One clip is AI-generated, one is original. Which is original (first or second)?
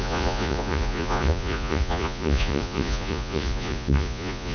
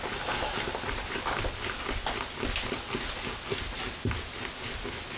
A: second